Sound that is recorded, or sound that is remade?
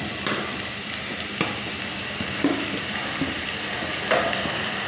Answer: recorded